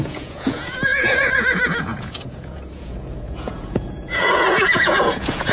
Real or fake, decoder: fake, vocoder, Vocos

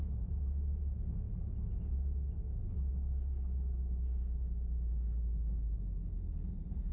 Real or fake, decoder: real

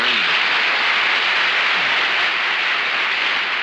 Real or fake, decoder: real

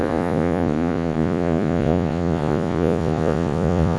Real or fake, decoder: fake, vocoder, Vocos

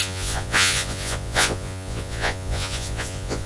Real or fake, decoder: fake, vocoder, Vocos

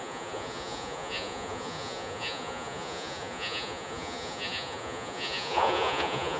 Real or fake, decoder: fake, vocoder, Vocos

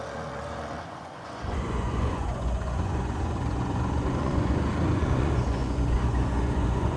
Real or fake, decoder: fake, vocoder, Vocos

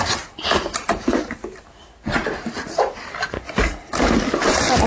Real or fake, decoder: real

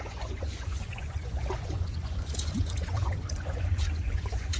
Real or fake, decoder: fake, vocoder, Vocos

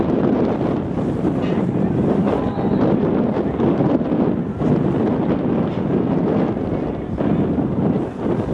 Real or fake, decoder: real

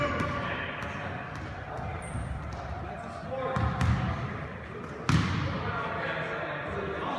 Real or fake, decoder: real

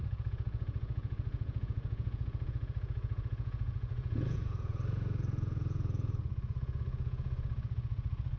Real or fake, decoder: fake, vocoder, Vocos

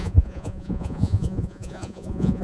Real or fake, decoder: fake, vocoder, Vocos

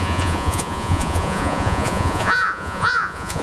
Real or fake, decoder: fake, vocoder, Vocos